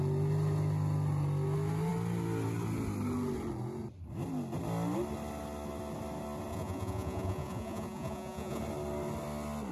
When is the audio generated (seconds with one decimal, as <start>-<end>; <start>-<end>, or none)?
6.5-8.6